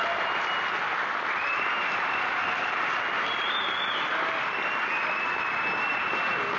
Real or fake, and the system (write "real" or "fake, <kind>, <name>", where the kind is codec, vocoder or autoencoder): real